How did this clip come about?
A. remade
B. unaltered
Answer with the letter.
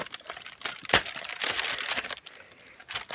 B